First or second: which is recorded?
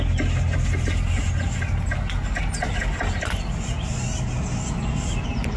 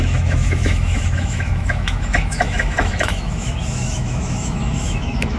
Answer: first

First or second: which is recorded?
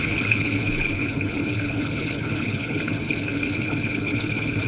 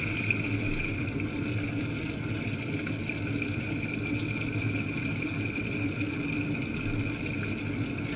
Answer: second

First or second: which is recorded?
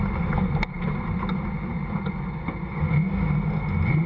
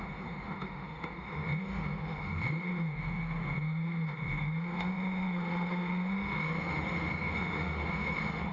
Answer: first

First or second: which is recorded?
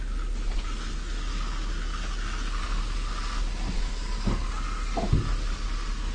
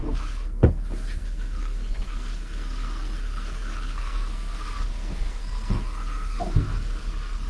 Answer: first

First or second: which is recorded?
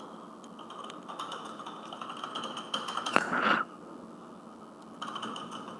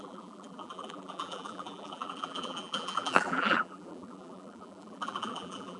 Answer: first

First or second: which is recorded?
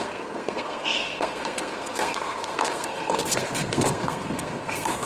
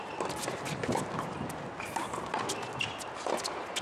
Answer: second